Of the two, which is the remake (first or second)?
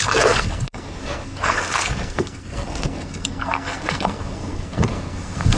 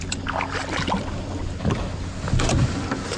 first